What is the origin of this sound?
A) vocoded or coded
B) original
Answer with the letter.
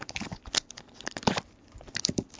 A